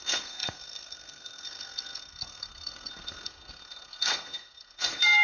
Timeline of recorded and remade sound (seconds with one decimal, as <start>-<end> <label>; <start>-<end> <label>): 0.0-5.2 remade